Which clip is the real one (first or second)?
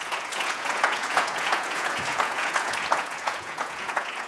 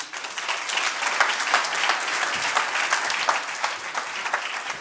second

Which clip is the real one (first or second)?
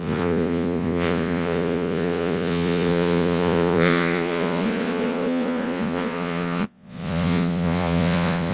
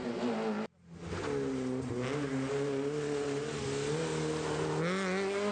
second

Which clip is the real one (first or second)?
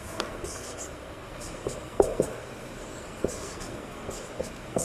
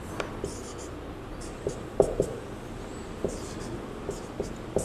second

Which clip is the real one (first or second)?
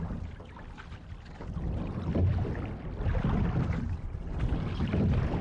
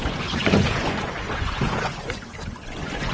first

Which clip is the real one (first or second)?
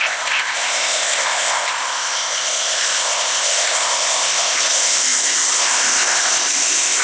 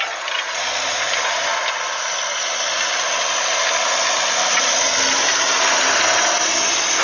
second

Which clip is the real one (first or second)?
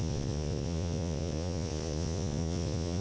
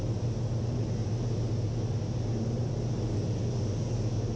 second